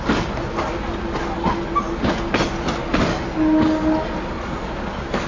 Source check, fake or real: real